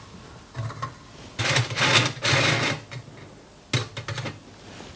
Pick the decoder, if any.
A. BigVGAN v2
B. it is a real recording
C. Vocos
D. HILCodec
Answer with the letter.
B